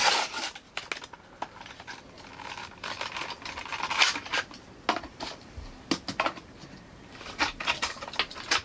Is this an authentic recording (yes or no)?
yes